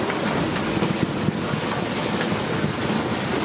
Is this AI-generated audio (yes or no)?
no